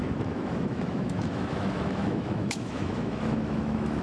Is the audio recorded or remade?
remade